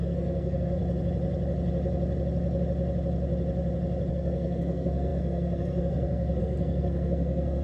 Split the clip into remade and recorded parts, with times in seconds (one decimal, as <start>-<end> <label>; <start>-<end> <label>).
0.0-0.8 remade; 0.8-4.1 recorded; 4.1-7.6 remade